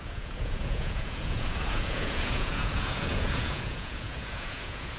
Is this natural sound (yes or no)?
no